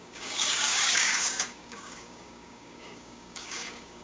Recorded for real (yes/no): no